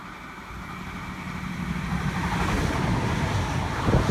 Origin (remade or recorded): recorded